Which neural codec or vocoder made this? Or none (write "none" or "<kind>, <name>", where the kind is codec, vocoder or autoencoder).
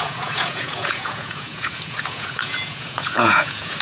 vocoder, Vocos